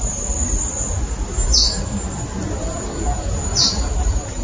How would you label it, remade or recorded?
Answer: recorded